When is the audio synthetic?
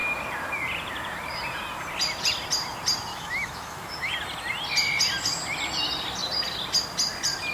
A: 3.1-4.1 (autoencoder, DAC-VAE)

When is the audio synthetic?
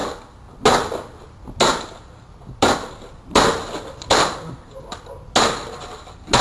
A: none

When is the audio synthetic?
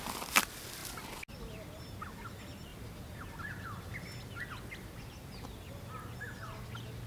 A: none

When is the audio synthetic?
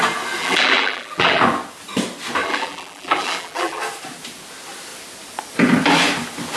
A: 0.4-1.4 (vocoder, BigVGAN v2); 2.4-3.8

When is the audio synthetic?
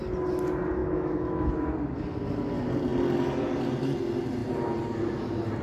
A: 0.8-1.5 (autoencoder, DAC-VAE)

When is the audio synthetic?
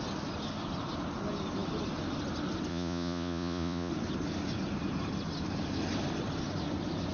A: 2.7-3.9 (vocoder, Vocos)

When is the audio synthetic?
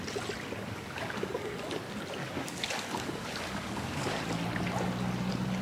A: 0.6-1.7 (codec, DAC); 2.2-4.2